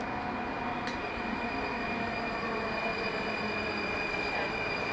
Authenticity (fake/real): real